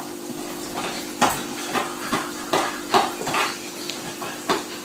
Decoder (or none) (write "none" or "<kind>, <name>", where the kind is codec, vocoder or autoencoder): none